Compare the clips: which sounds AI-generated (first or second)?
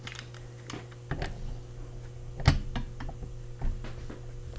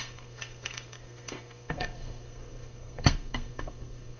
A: second